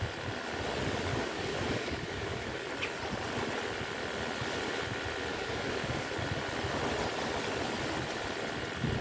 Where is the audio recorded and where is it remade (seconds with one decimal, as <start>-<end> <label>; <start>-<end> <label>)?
0.0-1.1 recorded; 1.1-2.7 remade; 2.7-5.3 recorded; 5.3-6.1 remade; 6.1-9.0 recorded

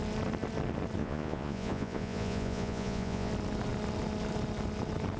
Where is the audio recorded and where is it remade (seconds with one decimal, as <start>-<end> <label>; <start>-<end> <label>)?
0.0-1.0 recorded; 1.0-3.3 remade; 3.3-5.2 recorded

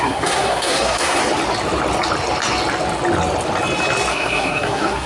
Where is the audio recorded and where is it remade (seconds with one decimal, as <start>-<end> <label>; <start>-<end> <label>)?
0.0-1.2 remade; 1.2-4.1 recorded; 4.1-5.1 remade

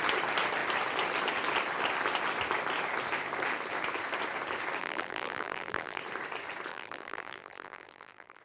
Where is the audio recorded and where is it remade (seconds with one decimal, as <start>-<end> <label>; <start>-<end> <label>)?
0.0-4.8 recorded; 4.8-6.0 remade; 6.0-6.7 recorded; 6.7-8.4 remade

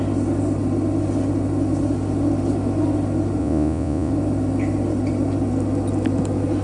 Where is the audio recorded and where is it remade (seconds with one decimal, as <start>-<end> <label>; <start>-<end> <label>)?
0.0-3.4 recorded; 3.4-4.1 remade; 4.1-6.6 recorded

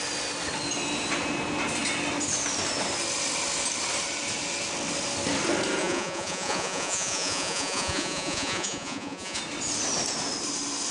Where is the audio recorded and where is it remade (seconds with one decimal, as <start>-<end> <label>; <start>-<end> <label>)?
0.0-5.8 recorded; 5.8-9.4 remade; 9.4-10.9 recorded

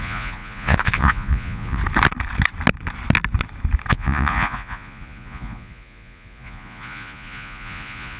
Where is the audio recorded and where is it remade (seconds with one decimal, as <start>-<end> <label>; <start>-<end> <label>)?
0.0-1.8 remade; 1.8-3.9 recorded; 3.9-8.2 remade